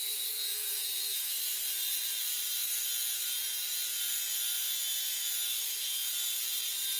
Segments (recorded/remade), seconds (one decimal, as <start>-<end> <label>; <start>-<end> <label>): 0.0-1.4 remade; 1.4-5.5 recorded; 5.5-6.1 remade; 6.1-7.0 recorded